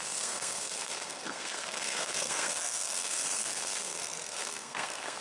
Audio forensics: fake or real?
fake